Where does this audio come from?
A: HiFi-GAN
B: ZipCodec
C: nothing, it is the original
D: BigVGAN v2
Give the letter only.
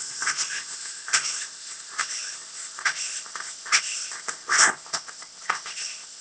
B